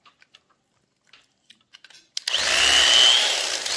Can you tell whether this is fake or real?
real